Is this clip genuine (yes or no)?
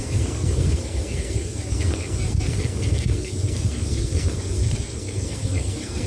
no